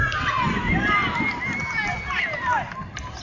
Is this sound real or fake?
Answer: real